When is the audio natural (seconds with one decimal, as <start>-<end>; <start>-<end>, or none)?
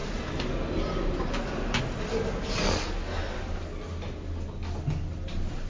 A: 0.0-5.7